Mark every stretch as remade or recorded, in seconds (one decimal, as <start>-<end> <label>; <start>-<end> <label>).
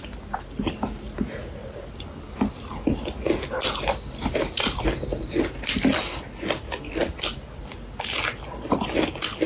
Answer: 0.0-9.5 recorded